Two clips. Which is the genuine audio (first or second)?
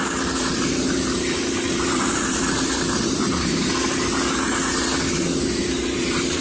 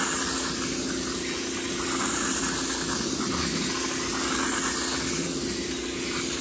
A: second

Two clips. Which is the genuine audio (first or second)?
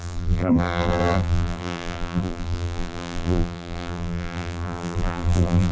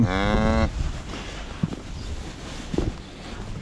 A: second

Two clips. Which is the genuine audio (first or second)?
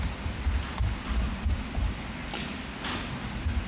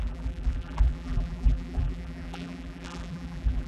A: first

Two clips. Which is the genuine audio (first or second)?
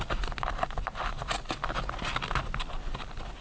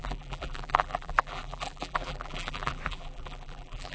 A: first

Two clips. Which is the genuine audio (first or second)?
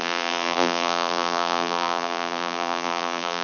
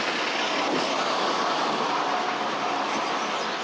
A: second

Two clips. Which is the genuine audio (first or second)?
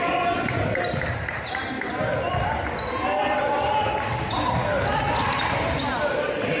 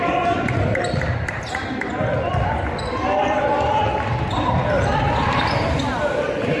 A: first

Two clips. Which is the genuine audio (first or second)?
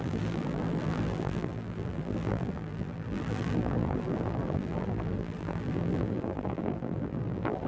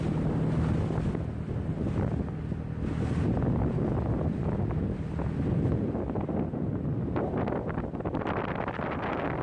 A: second